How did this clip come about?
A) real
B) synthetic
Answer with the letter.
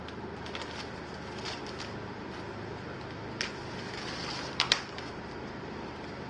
A